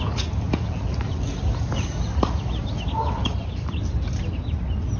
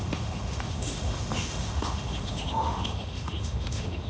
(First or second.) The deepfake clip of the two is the second